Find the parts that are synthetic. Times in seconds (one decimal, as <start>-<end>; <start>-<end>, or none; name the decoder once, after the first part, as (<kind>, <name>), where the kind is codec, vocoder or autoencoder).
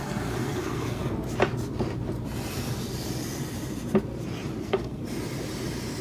0.0-1.0 (codec, SNAC); 4.6-5.0